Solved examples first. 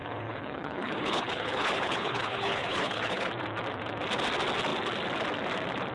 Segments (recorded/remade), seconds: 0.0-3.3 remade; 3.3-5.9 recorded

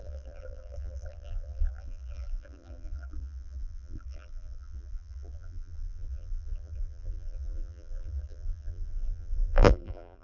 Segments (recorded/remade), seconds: 0.0-10.2 remade

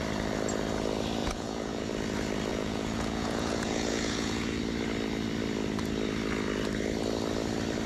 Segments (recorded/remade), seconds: 0.0-1.2 recorded; 1.2-1.9 remade; 1.9-2.5 recorded; 2.5-4.6 remade; 4.6-7.9 recorded